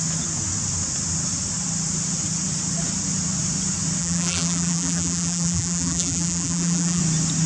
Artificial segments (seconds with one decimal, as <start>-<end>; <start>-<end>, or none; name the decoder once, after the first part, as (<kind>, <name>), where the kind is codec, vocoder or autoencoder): 4.0-7.0 (vocoder, BigVGAN v2)